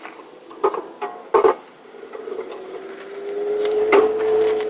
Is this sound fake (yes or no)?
yes